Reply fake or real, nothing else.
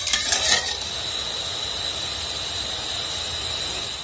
real